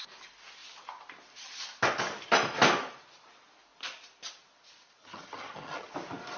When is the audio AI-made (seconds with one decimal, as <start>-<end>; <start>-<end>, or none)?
5.0-5.9